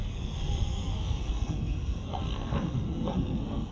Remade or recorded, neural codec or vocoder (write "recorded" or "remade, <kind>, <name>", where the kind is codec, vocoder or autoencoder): remade, codec, SNAC